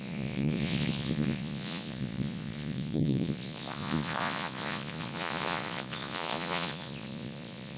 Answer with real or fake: fake